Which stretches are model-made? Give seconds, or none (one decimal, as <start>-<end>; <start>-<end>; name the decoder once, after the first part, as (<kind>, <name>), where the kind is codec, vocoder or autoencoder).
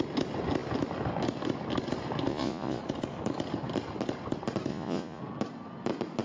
2.3-2.8 (vocoder, Vocos); 4.7-5.2